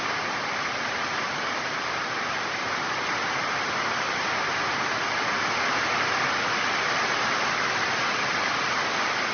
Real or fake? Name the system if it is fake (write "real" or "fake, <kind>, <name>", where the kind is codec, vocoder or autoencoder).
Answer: real